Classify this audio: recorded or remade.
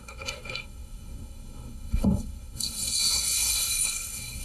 remade